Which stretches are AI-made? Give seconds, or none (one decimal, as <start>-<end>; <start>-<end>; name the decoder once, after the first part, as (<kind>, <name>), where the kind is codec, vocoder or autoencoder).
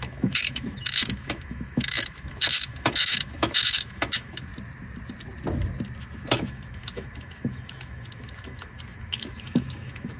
0.0-4.5 (autoencoder, DAC-VAE); 6.0-10.2